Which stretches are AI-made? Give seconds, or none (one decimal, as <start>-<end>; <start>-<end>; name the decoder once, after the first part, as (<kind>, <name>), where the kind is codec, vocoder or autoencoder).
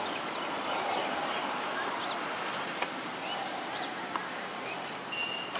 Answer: 1.0-1.7 (vocoder, BigVGAN v2); 3.4-4.9